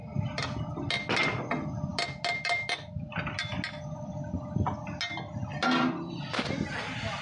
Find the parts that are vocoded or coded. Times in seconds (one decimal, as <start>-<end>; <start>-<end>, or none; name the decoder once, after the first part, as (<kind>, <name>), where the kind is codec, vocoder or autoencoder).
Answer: none